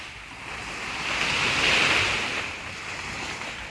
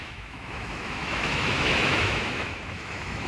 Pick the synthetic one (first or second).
second